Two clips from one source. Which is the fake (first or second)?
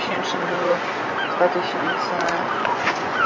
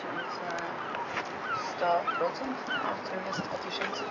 first